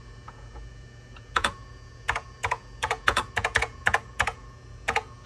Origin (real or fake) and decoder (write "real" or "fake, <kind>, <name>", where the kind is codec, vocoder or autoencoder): fake, vocoder, Vocos